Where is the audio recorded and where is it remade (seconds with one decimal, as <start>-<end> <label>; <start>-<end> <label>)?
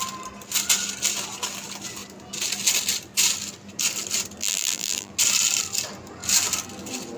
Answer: 0.0-4.4 recorded; 4.4-5.1 remade; 5.1-7.2 recorded